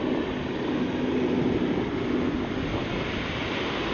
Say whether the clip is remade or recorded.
recorded